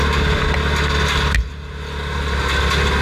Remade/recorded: recorded